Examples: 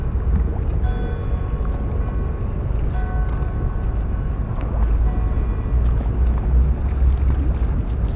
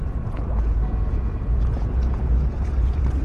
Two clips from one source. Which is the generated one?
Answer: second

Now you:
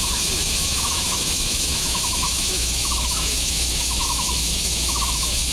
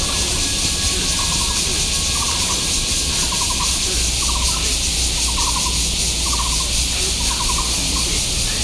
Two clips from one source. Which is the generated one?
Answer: first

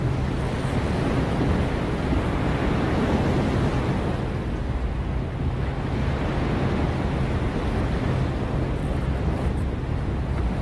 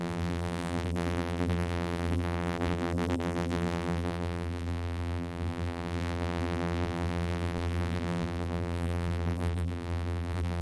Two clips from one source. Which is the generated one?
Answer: second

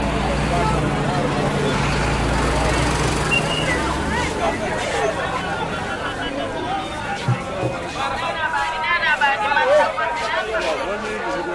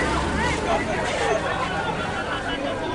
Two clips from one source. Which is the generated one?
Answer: second